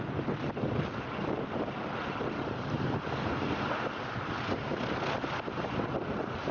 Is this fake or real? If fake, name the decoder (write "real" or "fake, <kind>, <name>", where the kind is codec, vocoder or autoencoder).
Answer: real